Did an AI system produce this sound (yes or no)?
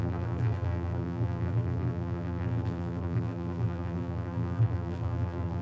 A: yes